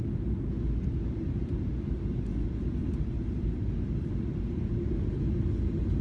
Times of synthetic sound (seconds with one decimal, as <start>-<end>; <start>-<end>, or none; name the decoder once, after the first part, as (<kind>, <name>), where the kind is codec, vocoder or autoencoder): none